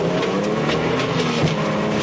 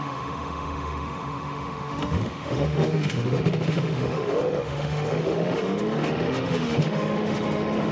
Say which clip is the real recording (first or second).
first